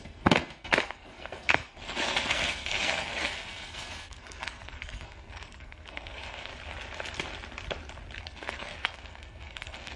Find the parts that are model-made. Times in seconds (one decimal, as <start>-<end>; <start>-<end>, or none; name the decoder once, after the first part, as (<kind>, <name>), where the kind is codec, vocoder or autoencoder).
0.0-6.5 (codec, SNAC); 8.2-10.0